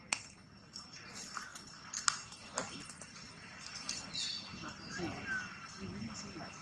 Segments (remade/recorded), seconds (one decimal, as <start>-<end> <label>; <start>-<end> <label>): 0.0-6.6 recorded